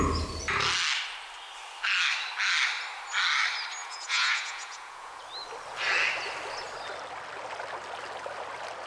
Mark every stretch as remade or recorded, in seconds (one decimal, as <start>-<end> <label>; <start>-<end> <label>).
0.0-3.8 recorded; 3.8-5.2 remade; 5.2-8.9 recorded